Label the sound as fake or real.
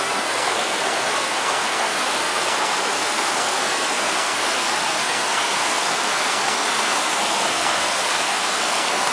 fake